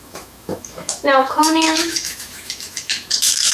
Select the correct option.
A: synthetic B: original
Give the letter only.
A